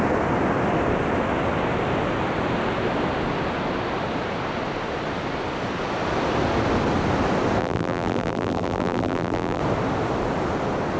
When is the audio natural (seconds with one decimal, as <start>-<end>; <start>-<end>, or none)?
0.0-7.6; 9.6-11.0